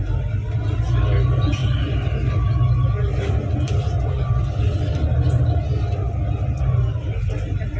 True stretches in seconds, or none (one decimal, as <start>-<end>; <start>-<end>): 0.0-7.8